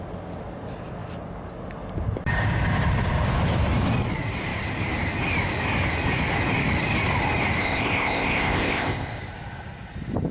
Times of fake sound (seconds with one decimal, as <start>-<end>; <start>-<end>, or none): 7.6-9.2